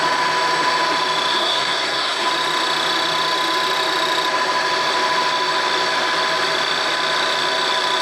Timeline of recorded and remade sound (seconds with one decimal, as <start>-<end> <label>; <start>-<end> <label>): 0.0-1.3 recorded; 1.3-2.3 remade; 2.3-8.0 recorded